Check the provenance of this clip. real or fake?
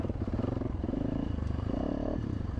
fake